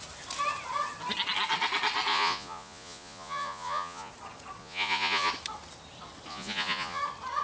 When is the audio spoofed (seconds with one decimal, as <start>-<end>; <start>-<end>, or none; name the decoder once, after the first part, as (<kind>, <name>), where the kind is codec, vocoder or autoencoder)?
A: 2.1-4.1 (vocoder, Vocos); 4.6-5.3; 6.3-7.0